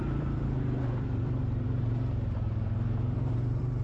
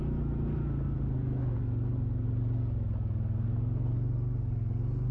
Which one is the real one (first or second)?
second